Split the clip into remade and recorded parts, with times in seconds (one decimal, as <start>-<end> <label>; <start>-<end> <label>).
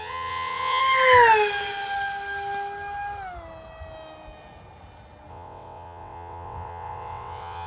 0.0-0.8 remade; 0.8-5.3 recorded; 5.3-7.7 remade